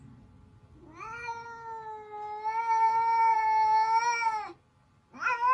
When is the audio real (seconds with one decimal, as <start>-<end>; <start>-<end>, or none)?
0.0-5.5